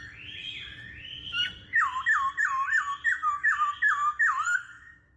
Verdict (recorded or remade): recorded